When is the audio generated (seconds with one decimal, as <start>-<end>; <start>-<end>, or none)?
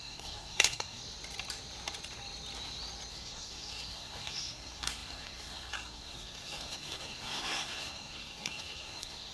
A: 0.0-1.0; 3.1-9.3